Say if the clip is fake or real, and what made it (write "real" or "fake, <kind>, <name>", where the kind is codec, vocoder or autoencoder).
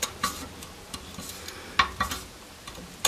real